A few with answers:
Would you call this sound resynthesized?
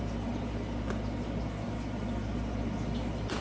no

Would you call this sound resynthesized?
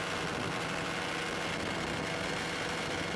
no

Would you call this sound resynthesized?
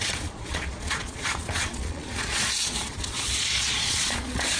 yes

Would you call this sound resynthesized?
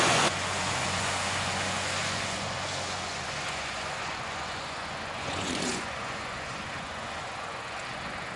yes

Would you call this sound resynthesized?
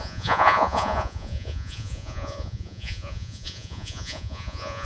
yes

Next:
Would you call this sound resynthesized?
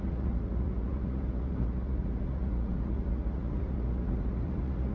yes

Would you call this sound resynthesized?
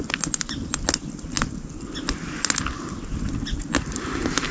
no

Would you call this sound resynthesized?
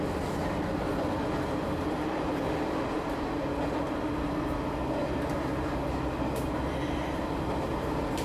no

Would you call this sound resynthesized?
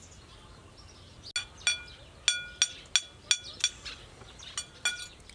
no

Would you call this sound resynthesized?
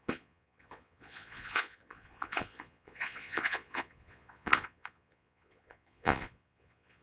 yes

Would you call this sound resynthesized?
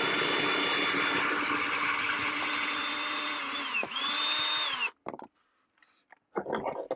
no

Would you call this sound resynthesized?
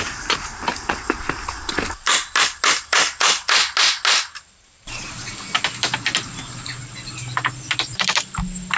no